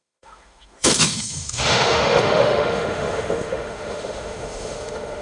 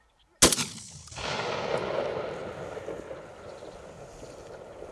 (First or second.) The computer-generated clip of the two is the first